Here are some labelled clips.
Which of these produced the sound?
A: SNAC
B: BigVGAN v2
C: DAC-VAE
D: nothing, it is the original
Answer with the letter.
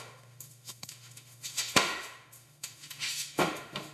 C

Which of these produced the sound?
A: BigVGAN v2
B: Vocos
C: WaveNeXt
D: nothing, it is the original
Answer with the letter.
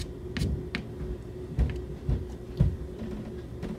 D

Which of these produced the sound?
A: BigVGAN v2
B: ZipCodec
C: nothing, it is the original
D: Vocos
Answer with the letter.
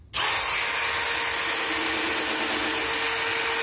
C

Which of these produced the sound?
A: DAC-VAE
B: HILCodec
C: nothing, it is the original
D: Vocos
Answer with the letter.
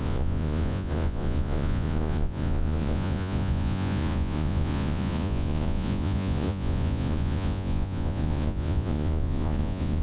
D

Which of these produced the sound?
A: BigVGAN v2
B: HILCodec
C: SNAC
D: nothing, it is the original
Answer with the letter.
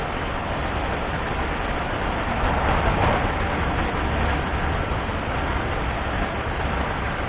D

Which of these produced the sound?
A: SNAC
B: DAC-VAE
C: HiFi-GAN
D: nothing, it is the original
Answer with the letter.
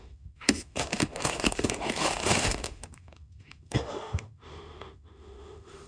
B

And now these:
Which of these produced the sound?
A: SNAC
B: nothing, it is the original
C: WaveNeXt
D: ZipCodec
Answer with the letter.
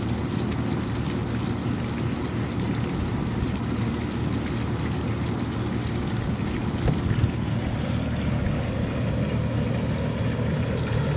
B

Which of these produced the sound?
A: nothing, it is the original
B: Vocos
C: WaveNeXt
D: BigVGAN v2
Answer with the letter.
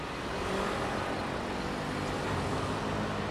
A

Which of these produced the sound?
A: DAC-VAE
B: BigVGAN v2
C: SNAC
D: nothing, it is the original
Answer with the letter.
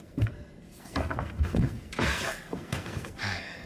C